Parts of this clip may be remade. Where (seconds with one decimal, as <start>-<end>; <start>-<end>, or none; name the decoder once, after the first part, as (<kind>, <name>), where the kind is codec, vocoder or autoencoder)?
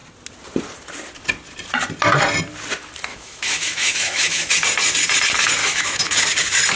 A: 3.1-4.5 (autoencoder, DAC-VAE); 5.6-6.2